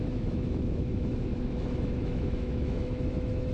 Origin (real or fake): fake